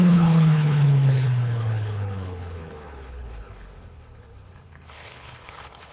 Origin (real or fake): fake